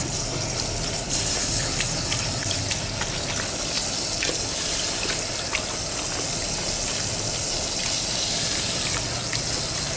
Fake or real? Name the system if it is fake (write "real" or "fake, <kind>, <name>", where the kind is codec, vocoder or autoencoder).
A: real